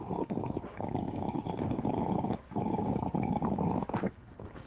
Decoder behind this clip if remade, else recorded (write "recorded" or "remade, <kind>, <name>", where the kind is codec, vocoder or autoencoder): remade, codec, DAC